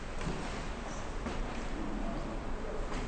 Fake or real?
real